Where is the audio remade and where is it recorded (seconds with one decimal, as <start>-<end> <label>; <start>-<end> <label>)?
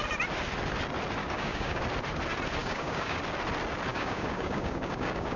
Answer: 0.0-1.2 recorded; 1.2-1.8 remade; 1.8-2.6 recorded; 2.6-3.2 remade; 3.2-3.9 recorded; 3.9-5.4 remade